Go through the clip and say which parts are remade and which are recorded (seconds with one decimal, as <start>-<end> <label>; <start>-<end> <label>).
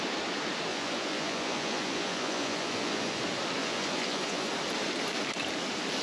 0.0-0.7 recorded; 0.7-3.2 remade; 3.2-3.6 recorded; 3.6-4.5 remade; 4.5-6.0 recorded